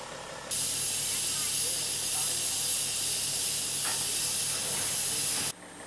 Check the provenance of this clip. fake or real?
real